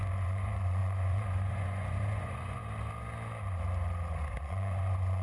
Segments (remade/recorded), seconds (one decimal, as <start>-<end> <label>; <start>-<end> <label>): 0.0-2.6 remade; 2.6-4.3 recorded; 4.3-5.2 remade